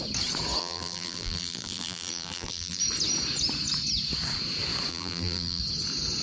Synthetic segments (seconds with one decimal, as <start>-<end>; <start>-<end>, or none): 0.6-2.8; 4.9-5.6